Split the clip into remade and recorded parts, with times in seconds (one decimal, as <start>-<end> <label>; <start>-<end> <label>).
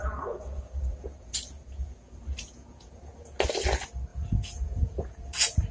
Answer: 0.0-3.4 remade; 3.4-4.1 recorded; 4.1-5.7 remade